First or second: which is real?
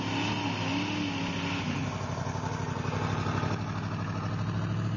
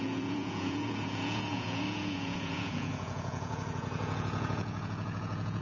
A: first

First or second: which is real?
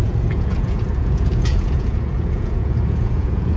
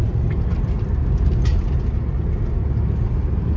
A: second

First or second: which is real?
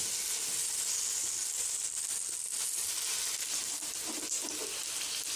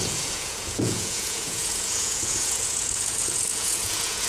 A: first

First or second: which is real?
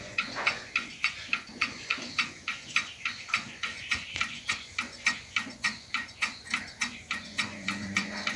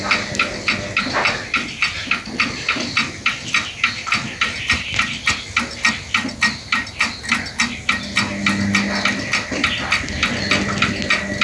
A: second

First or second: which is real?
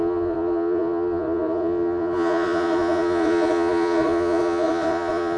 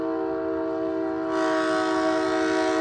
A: second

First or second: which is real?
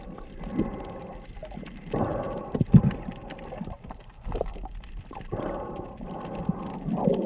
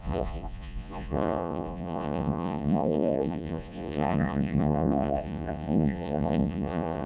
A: first